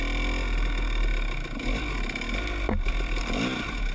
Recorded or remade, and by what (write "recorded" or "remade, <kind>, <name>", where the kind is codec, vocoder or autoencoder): recorded